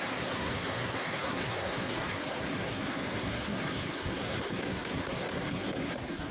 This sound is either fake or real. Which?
fake